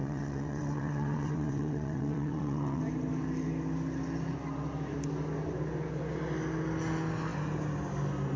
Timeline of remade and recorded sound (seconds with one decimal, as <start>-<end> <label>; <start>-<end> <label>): 0.0-2.8 remade; 2.8-8.4 recorded